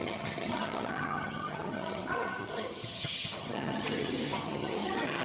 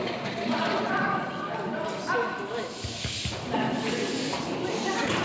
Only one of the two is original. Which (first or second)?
second